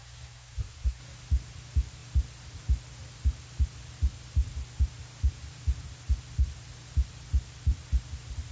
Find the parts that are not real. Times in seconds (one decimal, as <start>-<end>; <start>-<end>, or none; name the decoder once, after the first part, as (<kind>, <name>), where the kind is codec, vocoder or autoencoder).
0.0-1.0 (codec, SNAC)